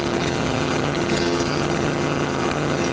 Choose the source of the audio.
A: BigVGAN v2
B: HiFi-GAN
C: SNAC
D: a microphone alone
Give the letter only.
B